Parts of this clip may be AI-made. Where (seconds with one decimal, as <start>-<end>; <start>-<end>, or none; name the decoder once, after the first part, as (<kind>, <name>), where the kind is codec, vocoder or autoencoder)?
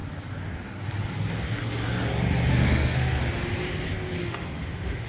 2.5-3.2 (autoencoder, DAC-VAE); 4.2-5.1